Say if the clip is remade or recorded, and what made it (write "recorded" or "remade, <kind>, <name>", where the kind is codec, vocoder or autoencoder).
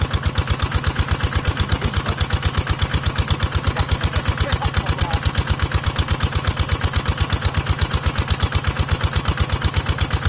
recorded